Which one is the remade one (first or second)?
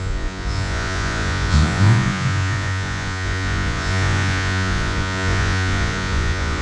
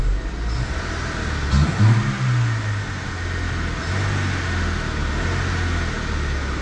first